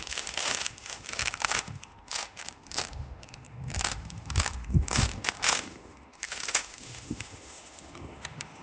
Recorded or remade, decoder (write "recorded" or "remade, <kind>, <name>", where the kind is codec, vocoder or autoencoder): remade, autoencoder, DAC-VAE